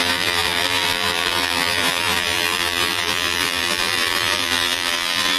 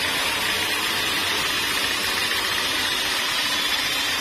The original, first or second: second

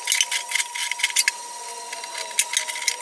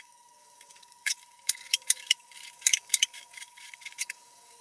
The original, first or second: first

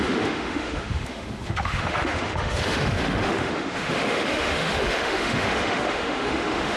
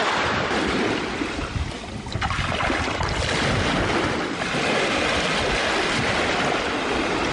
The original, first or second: second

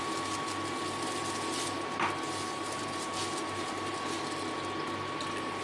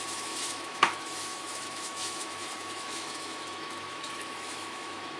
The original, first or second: first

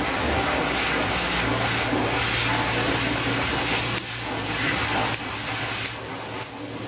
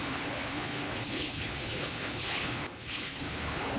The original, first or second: first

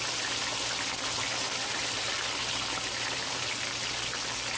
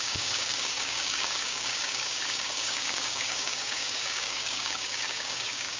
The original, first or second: first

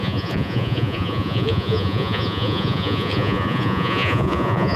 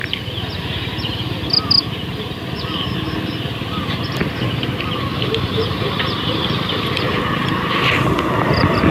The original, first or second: second